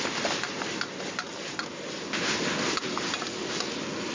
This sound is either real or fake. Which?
real